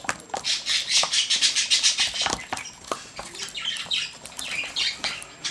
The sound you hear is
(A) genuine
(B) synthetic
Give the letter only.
B